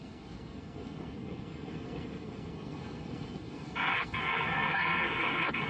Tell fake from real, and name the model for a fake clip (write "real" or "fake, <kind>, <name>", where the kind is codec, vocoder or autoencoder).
fake, codec, SNAC